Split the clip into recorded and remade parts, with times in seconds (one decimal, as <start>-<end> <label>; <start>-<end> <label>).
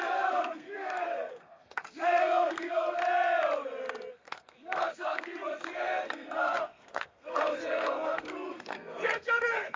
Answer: 0.0-3.0 remade; 3.0-4.1 recorded; 4.1-9.8 remade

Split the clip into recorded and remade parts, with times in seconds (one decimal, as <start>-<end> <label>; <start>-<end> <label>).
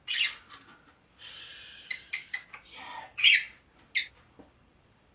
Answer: 0.0-1.8 recorded; 1.8-2.8 remade; 2.8-5.1 recorded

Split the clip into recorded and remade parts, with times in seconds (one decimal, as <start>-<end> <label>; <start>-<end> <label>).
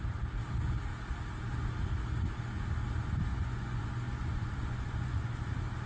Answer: 0.0-3.3 recorded; 3.3-5.4 remade; 5.4-5.9 recorded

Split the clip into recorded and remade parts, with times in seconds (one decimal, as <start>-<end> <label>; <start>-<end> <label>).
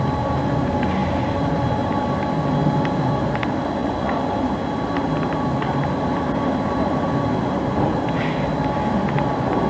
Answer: 0.0-3.8 recorded; 3.8-4.5 remade; 4.5-9.7 recorded